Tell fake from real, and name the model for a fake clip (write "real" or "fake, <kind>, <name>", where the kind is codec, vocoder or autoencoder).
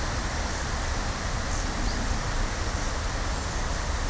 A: real